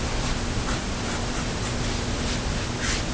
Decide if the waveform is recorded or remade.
recorded